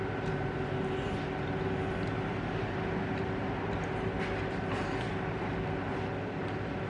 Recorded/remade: recorded